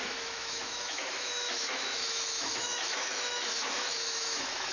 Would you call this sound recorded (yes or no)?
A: no